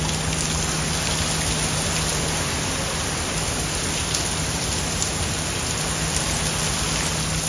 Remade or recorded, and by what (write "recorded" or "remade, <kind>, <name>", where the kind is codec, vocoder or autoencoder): recorded